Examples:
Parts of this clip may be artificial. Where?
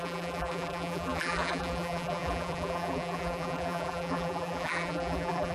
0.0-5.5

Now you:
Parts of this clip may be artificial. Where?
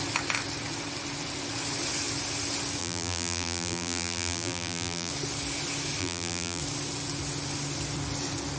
2.8-5.1; 6.0-6.6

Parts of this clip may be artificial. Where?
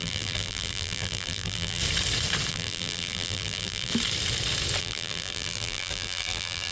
0.0-1.8; 2.5-3.9; 4.8-6.7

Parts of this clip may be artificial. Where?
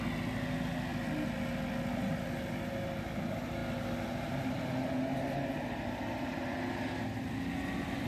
none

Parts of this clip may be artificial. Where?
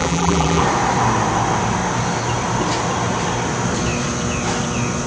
0.0-0.6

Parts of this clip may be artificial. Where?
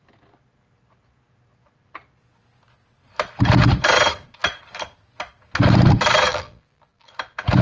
6.3-7.1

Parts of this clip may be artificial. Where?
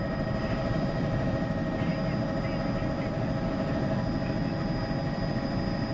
0.0-1.9; 5.4-5.9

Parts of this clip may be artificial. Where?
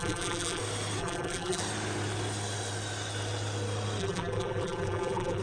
0.0-0.6; 1.0-1.6; 4.0-5.4